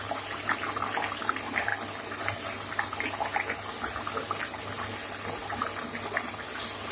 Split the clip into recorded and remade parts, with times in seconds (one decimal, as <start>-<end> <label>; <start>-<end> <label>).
0.0-6.9 recorded